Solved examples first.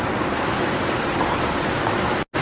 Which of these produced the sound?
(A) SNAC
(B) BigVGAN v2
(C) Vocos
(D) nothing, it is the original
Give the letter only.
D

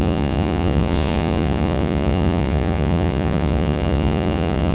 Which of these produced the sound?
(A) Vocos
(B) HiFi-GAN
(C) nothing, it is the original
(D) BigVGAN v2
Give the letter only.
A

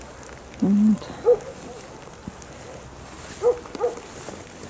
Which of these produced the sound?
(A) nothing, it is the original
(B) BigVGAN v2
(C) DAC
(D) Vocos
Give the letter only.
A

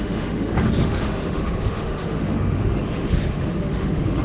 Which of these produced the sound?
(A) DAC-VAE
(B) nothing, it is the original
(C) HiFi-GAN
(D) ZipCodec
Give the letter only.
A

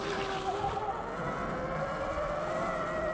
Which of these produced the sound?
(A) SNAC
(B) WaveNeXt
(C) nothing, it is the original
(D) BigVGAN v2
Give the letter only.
C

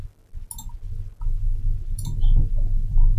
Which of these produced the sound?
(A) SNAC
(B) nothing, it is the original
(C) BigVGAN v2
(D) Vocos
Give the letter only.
B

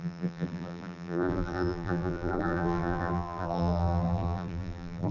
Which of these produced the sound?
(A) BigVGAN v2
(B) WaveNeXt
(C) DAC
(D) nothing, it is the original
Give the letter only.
A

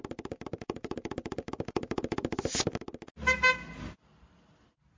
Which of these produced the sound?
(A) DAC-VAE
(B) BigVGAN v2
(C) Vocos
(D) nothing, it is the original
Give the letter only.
D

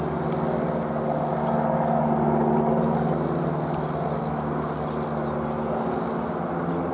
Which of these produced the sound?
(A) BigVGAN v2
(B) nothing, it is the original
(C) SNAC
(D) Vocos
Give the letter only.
B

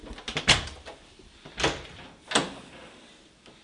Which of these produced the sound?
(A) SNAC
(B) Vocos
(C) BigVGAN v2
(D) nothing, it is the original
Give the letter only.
D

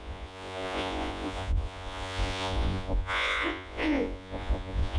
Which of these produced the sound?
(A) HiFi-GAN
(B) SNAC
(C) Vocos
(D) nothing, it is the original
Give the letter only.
C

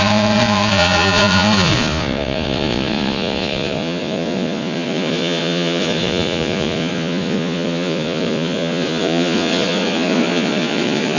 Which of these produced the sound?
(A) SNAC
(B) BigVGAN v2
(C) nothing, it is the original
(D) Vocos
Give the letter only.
D